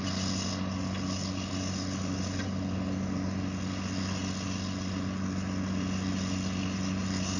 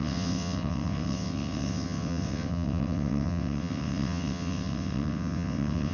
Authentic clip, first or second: first